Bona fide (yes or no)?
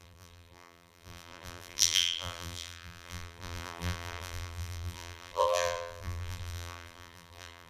no